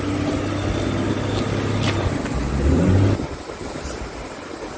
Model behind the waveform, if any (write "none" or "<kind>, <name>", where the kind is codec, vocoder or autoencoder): none